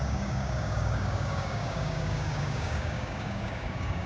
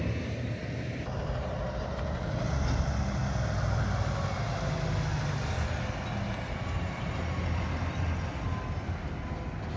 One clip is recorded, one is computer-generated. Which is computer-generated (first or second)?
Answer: first